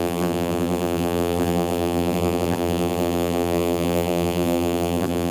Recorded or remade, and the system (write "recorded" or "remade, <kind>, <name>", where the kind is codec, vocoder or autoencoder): remade, vocoder, BigVGAN v2